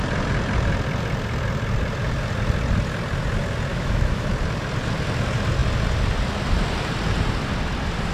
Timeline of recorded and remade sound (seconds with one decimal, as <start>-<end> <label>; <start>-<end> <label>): 0.0-3.7 recorded; 3.7-4.3 remade; 4.3-8.1 recorded